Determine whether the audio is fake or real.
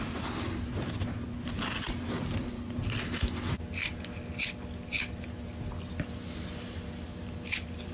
real